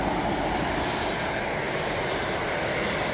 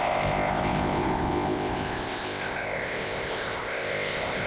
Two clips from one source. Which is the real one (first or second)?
first